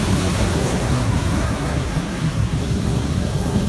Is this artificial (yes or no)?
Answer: yes